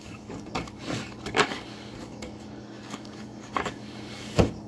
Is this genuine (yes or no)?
no